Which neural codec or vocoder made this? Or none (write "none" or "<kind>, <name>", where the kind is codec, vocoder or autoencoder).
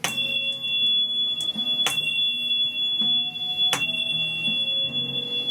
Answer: none